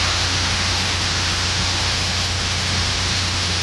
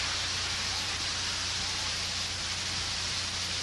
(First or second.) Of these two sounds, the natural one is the second